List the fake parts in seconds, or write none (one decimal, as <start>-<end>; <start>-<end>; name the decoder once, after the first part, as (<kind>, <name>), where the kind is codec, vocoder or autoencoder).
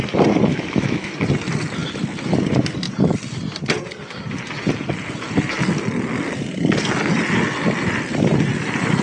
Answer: 0.5-1.1 (autoencoder, DAC-VAE)